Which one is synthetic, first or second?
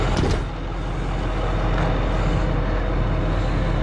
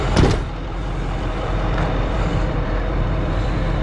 second